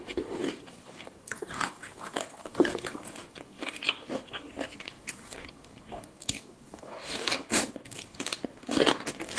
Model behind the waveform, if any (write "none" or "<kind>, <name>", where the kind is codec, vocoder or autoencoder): codec, DAC